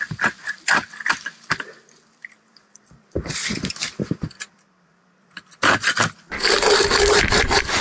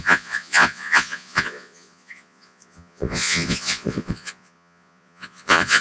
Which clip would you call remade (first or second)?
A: second